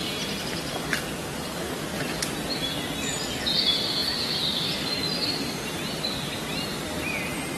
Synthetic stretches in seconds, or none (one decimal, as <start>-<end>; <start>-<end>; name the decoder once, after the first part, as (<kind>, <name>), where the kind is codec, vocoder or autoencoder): none